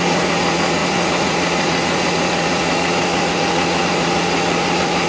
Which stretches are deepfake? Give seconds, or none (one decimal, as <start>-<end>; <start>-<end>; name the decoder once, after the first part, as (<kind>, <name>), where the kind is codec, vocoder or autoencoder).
0.0-5.1 (vocoder, Vocos)